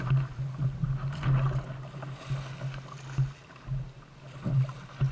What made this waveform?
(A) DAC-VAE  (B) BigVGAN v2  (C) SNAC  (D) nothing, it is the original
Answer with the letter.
D